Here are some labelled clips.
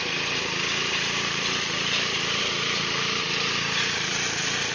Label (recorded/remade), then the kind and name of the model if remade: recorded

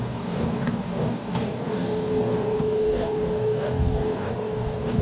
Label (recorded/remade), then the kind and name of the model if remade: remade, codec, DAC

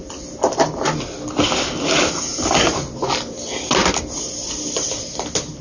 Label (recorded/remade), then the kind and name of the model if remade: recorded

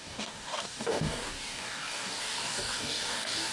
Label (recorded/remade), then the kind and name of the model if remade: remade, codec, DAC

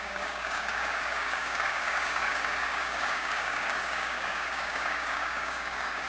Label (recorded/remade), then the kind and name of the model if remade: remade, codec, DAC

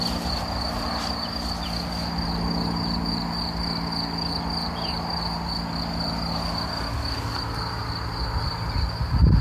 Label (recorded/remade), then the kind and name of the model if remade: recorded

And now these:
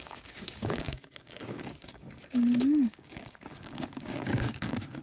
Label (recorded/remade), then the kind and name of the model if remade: remade, codec, DAC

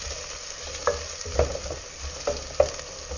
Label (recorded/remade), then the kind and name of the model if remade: recorded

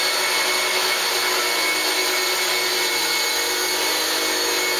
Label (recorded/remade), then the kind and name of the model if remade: recorded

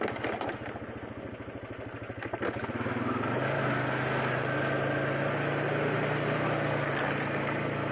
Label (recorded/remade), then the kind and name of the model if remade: recorded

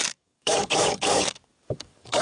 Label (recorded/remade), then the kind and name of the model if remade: remade, codec, DAC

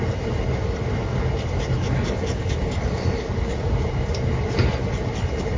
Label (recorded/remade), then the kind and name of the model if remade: recorded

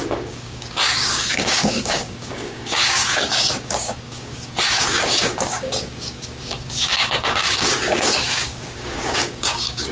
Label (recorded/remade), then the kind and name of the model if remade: remade, codec, DAC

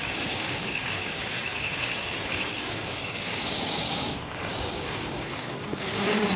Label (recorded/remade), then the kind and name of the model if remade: remade, codec, DAC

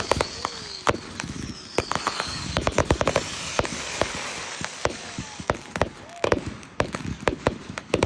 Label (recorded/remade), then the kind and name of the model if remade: remade, codec, DAC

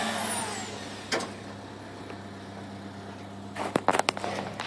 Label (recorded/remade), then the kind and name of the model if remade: recorded